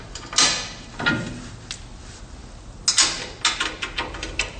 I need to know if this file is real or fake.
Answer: real